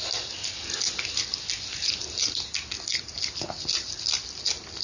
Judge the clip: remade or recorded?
recorded